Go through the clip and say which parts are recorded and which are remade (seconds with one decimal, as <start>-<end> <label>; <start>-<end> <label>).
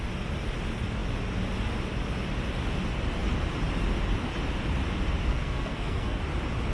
0.0-5.3 recorded; 5.3-6.2 remade; 6.2-6.7 recorded